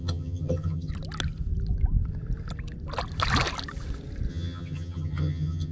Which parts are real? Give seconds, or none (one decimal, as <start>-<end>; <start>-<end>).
0.9-4.3